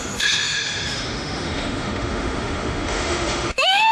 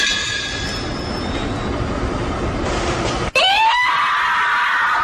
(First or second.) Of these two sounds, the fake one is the first